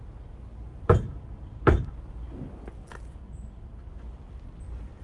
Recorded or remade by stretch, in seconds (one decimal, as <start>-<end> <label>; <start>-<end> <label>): 0.0-0.7 recorded; 0.7-1.9 remade; 1.9-3.2 recorded; 3.2-3.9 remade; 3.9-5.0 recorded